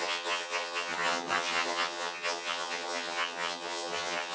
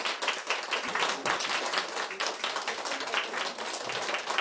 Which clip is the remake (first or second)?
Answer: first